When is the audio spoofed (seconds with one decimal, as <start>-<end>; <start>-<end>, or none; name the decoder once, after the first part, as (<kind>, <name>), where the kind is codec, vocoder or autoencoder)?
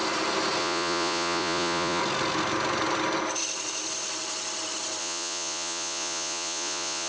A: 0.6-2.0 (vocoder, Vocos); 5.0-7.1